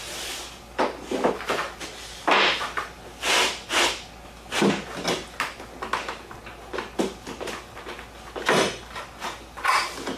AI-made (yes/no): no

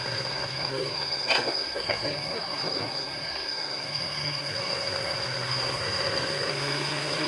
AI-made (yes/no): yes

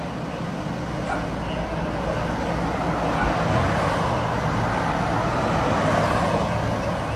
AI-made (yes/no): no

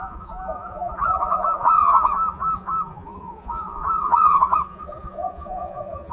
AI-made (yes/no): yes